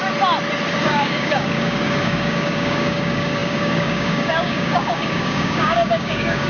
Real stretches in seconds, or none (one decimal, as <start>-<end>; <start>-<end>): 0.0-0.8